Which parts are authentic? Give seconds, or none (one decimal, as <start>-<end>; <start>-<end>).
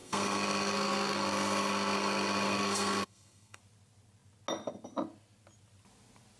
3.6-6.4